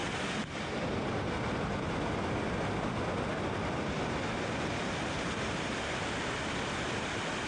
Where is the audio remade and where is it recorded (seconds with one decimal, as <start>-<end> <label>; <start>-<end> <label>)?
0.0-7.5 recorded